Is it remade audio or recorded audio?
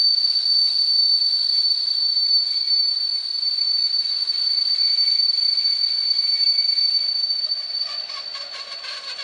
recorded